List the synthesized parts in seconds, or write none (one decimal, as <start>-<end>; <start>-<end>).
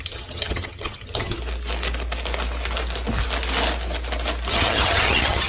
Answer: 0.0-1.4; 4.5-5.5